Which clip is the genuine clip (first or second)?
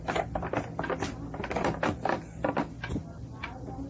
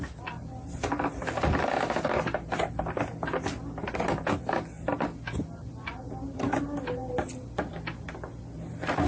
second